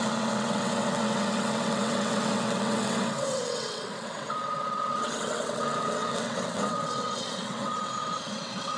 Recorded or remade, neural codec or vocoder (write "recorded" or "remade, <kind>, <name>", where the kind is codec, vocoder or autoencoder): remade, vocoder, WaveNeXt